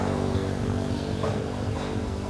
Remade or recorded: remade